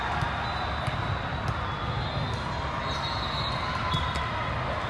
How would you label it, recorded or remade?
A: recorded